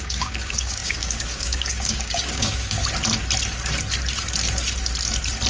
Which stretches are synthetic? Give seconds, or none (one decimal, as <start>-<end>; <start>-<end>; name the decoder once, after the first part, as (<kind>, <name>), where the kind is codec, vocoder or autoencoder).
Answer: 0.0-2.8 (codec, DAC)